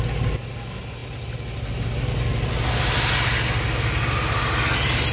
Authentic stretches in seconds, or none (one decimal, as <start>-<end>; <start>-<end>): 0.0-5.1